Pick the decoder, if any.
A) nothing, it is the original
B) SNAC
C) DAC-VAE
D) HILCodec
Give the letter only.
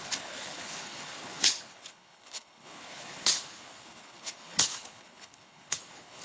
D